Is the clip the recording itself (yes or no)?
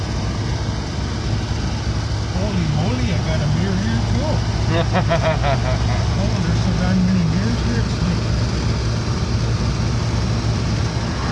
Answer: yes